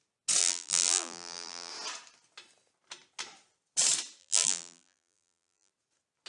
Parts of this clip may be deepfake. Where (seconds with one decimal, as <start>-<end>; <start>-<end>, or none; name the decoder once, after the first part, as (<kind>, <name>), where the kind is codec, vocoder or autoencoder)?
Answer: 0.4-1.7 (vocoder, BigVGAN v2); 4.2-5.7